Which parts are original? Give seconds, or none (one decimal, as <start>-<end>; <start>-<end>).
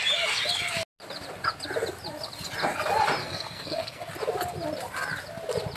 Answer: 0.0-3.2; 4.1-5.8